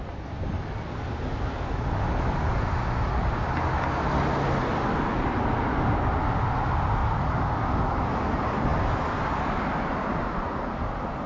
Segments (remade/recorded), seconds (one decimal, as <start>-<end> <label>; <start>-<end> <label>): 0.0-11.3 recorded